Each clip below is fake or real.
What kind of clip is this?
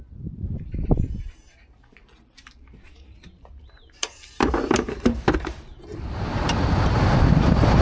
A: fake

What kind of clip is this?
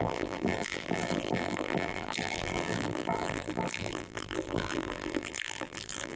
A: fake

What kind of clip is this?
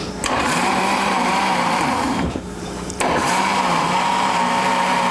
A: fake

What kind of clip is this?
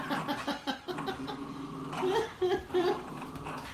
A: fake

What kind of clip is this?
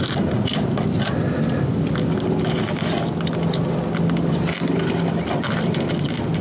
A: real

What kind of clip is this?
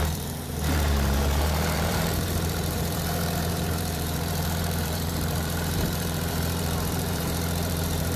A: fake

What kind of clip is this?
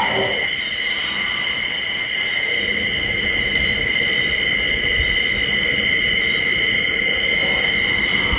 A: real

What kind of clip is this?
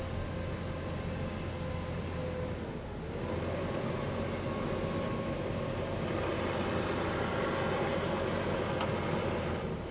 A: real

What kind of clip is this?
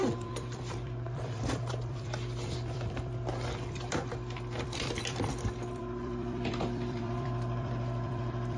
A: fake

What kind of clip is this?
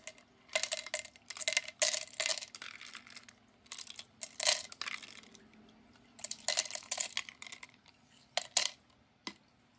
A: real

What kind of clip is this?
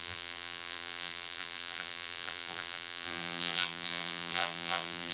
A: fake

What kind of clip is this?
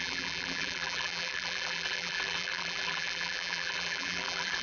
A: fake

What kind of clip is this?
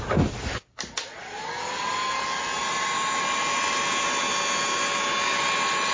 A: real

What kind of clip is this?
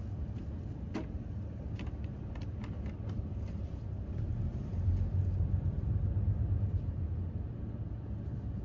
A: fake